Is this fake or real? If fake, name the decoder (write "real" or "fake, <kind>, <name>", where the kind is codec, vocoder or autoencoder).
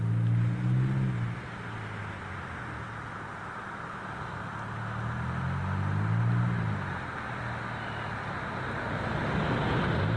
real